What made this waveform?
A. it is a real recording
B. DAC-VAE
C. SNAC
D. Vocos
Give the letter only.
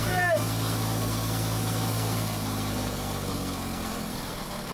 C